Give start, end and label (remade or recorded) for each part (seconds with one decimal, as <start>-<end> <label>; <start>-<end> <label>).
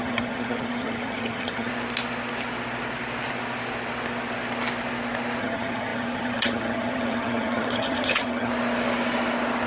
0.0-1.7 remade; 1.7-5.4 recorded; 5.4-8.5 remade; 8.5-9.7 recorded